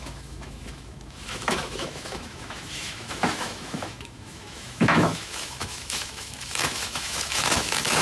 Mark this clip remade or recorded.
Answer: remade